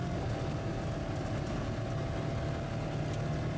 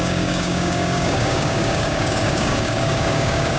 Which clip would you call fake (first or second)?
second